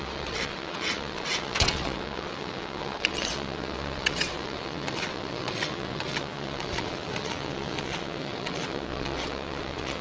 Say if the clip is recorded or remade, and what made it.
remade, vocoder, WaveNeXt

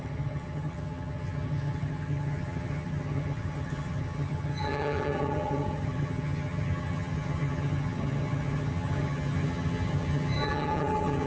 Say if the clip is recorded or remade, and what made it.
remade, vocoder, HiFi-GAN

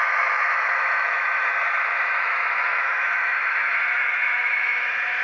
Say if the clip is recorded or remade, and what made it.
remade, autoencoder, DAC-VAE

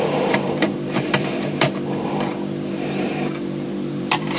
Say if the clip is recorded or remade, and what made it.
remade, vocoder, BigVGAN v2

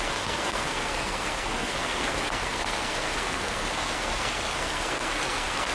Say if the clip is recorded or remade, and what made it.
remade, codec, SNAC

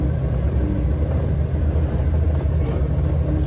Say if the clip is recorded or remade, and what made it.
recorded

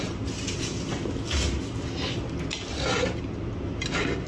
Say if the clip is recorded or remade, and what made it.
recorded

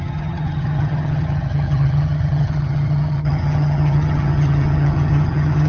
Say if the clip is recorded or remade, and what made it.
remade, vocoder, HiFi-GAN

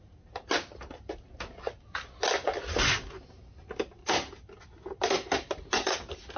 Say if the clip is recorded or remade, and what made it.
recorded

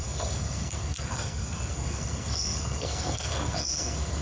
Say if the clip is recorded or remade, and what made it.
remade, codec, SNAC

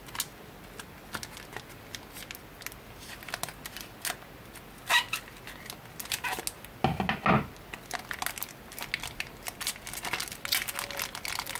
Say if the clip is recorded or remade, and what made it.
recorded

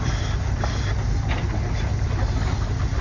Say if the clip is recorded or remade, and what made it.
recorded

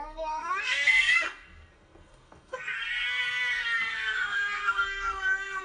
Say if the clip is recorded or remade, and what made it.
remade, codec, SNAC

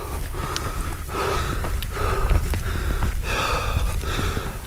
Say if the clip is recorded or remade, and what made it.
recorded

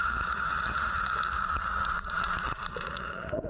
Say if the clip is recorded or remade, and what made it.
remade, vocoder, Vocos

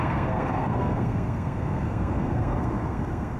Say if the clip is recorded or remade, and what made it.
remade, codec, SNAC